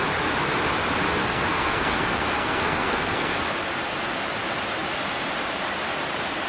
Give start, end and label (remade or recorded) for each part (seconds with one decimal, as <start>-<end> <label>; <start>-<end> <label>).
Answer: 0.0-1.2 recorded; 1.2-3.3 remade; 3.3-6.5 recorded